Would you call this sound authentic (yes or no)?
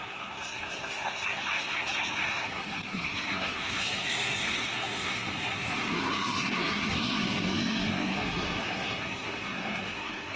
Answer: no